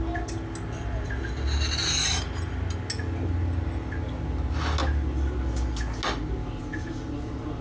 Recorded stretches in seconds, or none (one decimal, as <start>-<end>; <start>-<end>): 0.0-7.6